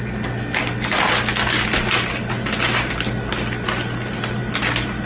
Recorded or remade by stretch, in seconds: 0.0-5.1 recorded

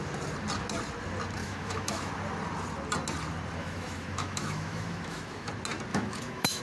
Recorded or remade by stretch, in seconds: 0.0-1.4 recorded; 1.4-2.1 remade; 2.1-3.6 recorded; 3.6-5.5 remade; 5.5-5.9 recorded; 5.9-6.6 remade

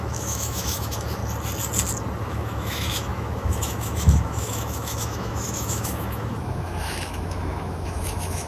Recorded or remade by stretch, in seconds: 0.0-1.2 remade; 1.2-2.2 recorded; 2.2-8.5 remade